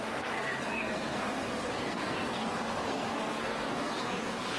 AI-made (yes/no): yes